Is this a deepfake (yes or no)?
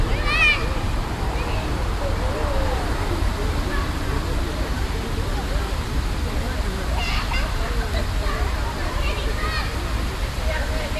no